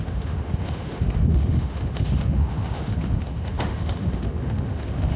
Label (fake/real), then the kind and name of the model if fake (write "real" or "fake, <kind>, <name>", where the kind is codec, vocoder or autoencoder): fake, autoencoder, DAC-VAE